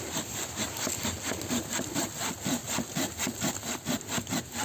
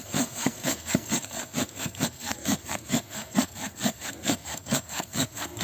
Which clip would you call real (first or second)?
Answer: first